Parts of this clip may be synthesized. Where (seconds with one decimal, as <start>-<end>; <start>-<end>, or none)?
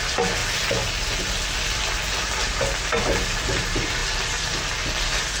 none